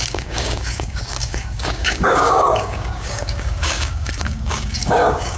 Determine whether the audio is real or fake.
fake